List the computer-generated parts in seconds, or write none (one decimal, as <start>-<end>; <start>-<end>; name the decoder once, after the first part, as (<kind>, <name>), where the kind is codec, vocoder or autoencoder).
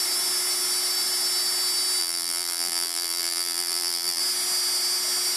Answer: 2.0-4.2 (vocoder, BigVGAN v2)